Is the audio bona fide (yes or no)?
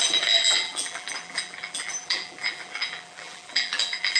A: no